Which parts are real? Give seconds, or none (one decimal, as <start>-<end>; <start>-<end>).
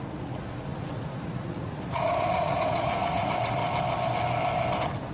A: 3.6-5.1